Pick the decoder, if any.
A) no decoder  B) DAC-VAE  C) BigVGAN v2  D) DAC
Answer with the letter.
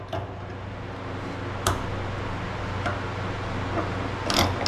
A